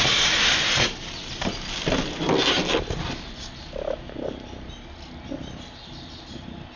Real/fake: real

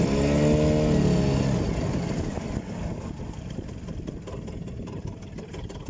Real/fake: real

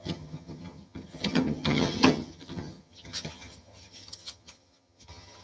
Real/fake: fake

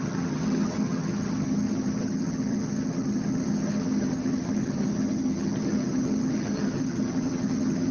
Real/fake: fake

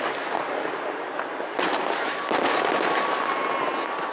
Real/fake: real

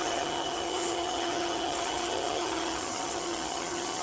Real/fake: fake